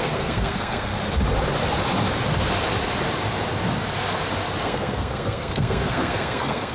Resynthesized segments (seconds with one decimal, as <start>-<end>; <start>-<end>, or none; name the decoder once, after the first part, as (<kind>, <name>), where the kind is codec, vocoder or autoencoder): 0.0-0.9 (codec, SNAC); 4.6-6.7